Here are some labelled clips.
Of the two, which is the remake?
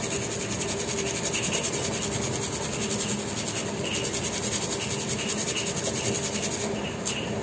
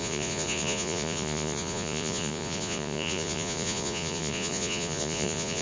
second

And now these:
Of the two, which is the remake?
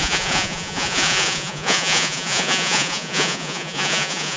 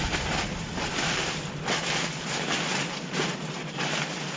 first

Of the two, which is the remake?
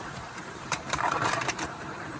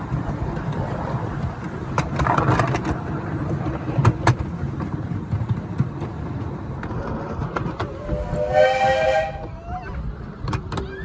first